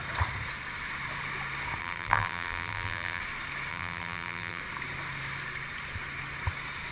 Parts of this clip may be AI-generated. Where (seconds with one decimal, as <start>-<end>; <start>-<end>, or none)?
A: 1.8-3.2; 3.7-4.6